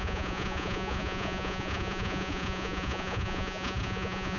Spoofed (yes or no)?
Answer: yes